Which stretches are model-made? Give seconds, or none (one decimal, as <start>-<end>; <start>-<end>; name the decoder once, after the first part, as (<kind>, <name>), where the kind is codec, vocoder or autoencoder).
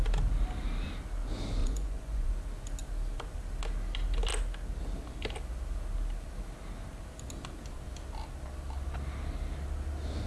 1.6-2.3 (vocoder, Vocos)